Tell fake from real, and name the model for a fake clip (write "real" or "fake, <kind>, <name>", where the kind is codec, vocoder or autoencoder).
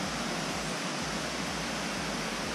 real